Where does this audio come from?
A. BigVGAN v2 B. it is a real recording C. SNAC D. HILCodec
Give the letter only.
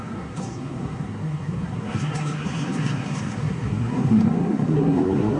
C